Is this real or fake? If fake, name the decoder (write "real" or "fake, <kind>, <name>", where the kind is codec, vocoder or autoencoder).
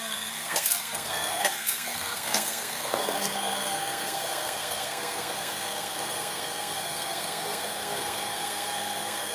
fake, codec, SNAC